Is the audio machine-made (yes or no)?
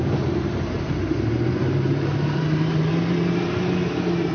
yes